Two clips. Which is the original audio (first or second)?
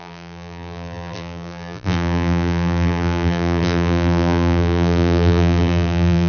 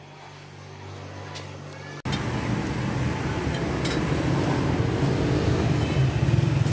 second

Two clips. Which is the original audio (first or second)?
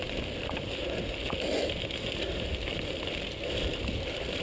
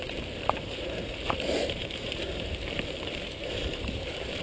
first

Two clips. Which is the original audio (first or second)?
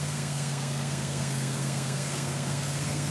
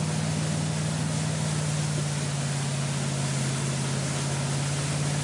second